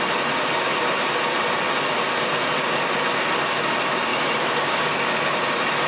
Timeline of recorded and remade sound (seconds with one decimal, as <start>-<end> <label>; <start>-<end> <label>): 0.0-4.1 recorded; 4.1-5.4 remade; 5.4-5.9 recorded